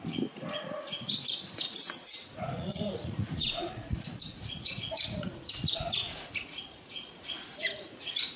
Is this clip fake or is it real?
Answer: fake